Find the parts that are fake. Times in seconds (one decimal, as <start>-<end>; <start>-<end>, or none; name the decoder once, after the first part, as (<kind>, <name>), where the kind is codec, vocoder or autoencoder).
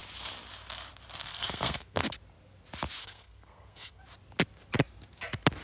1.3-2.0 (codec, SNAC); 3.0-4.0